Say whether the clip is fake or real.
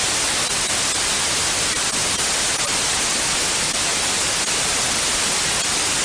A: real